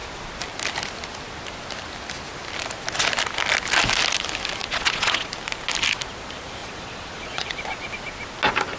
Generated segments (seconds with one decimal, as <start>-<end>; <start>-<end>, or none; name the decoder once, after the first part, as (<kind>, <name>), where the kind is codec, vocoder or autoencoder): 4.6-5.3 (vocoder, Vocos); 6.6-7.9